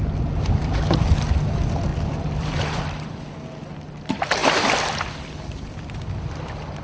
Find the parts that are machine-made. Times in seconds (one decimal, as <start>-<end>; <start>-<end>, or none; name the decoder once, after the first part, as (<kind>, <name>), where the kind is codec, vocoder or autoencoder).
1.9-3.3 (vocoder, BigVGAN v2)